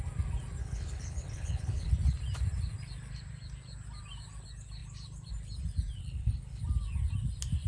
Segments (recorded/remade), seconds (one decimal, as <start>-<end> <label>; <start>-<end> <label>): 0.0-0.6 recorded; 0.6-1.9 remade; 1.9-6.0 recorded; 6.0-6.6 remade; 6.6-7.7 recorded